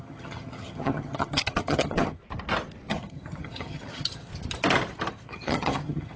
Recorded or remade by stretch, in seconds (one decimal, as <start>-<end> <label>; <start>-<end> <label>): 0.0-2.2 remade; 2.2-2.9 recorded; 2.9-4.3 remade; 4.3-5.1 recorded; 5.1-6.2 remade